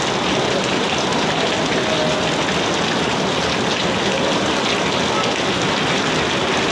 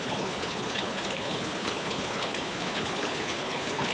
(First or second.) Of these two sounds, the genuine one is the first